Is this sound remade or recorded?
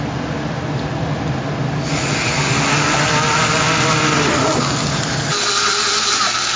recorded